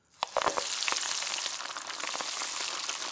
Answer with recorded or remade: recorded